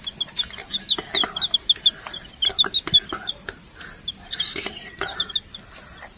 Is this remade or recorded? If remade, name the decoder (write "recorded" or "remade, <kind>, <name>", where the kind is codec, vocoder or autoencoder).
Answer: recorded